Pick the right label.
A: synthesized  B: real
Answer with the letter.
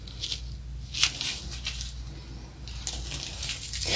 B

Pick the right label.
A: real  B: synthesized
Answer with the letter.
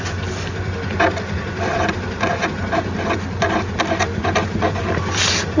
A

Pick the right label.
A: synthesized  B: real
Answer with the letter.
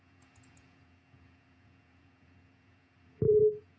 A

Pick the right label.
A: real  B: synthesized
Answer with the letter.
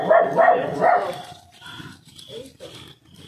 A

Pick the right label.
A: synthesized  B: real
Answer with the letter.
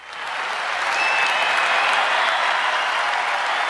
B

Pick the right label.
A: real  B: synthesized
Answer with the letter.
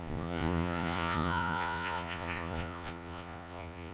B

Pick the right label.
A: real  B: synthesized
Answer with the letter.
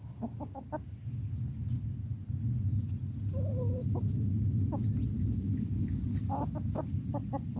A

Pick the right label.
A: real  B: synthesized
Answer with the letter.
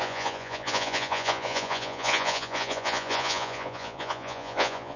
B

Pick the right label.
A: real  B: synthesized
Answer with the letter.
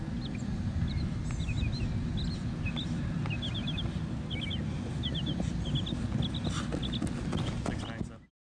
A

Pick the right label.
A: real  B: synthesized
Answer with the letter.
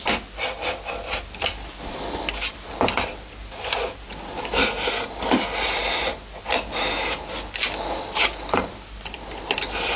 A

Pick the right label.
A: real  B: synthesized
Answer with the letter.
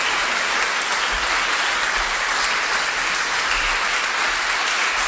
A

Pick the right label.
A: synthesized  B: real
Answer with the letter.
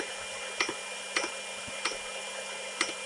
B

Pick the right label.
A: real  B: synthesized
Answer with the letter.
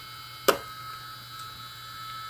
A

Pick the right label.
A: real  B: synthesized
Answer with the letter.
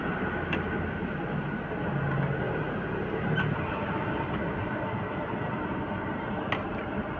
A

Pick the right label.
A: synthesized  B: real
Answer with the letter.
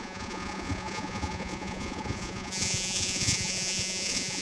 A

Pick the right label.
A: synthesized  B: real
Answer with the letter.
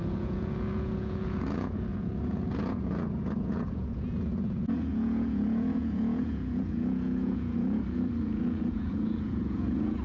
A